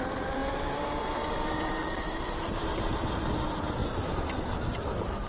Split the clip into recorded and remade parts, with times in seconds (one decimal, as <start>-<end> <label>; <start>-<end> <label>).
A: 0.0-0.4 remade; 0.4-1.7 recorded; 1.7-5.3 remade